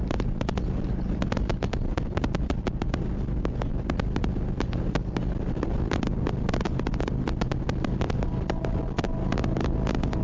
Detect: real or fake real